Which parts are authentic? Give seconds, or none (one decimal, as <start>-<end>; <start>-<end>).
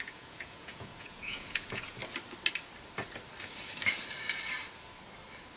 2.0-5.6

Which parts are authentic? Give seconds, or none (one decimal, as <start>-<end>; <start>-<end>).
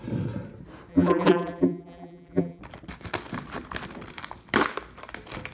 0.0-0.9; 2.6-5.5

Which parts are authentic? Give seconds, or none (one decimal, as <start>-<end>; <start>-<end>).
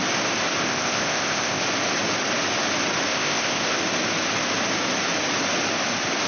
0.0-0.6; 1.6-3.1; 3.8-6.3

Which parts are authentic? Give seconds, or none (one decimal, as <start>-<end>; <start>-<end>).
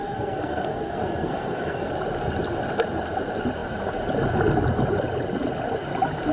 1.9-6.3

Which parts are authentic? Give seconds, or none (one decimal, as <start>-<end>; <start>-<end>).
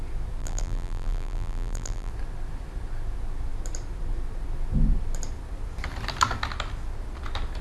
0.0-0.4; 2.1-7.6